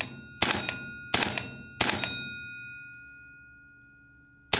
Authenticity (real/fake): real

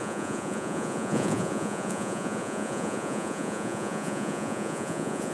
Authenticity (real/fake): fake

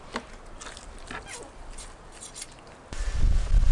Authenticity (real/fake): real